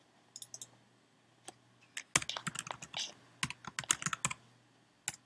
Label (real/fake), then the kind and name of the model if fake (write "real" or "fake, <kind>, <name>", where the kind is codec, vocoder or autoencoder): real